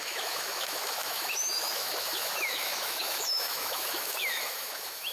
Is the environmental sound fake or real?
fake